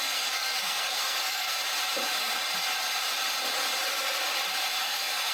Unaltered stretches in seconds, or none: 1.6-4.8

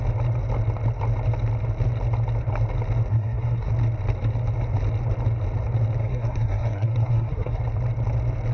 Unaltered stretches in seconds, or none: 0.0-3.1; 3.7-6.0; 7.6-8.5

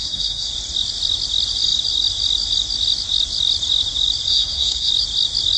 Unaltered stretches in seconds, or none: 0.5-4.3; 4.9-5.6

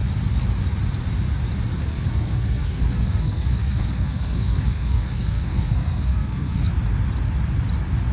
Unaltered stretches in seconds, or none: 0.0-1.8; 6.7-8.1